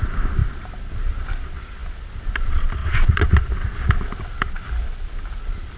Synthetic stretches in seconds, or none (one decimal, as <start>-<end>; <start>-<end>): 2.8-3.5